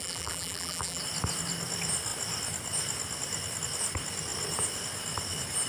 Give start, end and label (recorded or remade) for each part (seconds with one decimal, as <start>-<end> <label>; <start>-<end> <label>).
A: 0.0-1.0 remade; 1.0-5.7 recorded

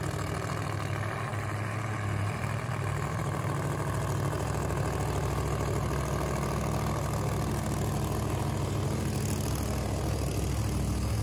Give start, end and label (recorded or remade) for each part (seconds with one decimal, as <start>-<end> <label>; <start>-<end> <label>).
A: 0.0-1.3 recorded; 1.3-3.2 remade; 3.2-11.2 recorded

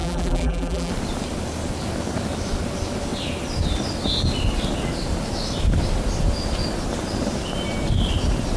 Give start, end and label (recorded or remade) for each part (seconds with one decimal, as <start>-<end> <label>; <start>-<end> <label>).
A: 0.0-0.9 remade; 0.9-8.6 recorded

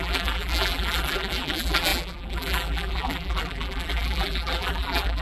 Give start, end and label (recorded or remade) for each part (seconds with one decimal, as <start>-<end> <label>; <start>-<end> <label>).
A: 0.0-5.2 remade

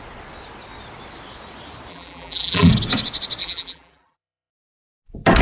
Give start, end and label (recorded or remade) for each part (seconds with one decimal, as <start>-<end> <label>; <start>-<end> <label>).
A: 0.0-1.9 recorded; 1.9-2.7 remade; 2.7-3.4 recorded; 3.4-4.5 remade; 4.5-5.4 recorded

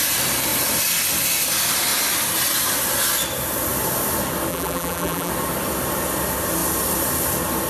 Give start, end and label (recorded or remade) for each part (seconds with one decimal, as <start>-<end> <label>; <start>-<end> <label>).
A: 0.0-4.5 recorded; 4.5-5.3 remade; 5.3-7.7 recorded

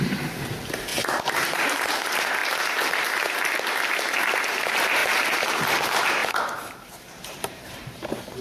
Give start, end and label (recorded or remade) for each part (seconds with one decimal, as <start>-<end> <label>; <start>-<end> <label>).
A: 0.0-2.4 remade; 2.4-4.4 recorded; 4.4-8.4 remade

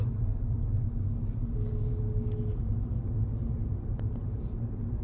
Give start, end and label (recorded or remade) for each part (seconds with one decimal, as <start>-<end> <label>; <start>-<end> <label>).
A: 0.0-5.0 recorded